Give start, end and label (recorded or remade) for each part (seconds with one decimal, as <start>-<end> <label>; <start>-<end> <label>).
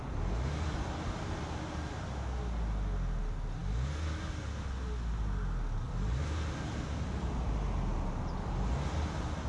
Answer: 0.0-9.5 recorded